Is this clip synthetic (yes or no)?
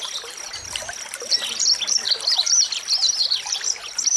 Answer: yes